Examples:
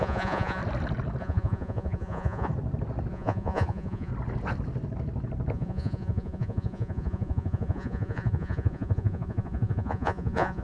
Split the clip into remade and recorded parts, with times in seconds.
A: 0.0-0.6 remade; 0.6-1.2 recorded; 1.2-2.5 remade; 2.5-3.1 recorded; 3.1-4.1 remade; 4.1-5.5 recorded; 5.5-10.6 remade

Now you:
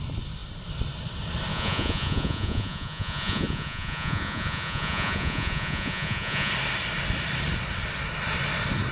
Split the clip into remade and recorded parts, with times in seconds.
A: 0.0-1.5 recorded; 1.5-6.5 remade; 6.5-8.9 recorded

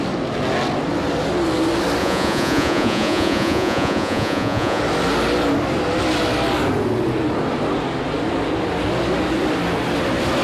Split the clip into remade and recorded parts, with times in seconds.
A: 0.0-2.0 recorded; 2.0-4.8 remade; 4.8-10.4 recorded

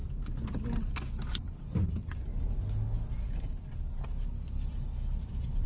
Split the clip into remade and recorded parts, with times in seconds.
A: 0.0-5.7 recorded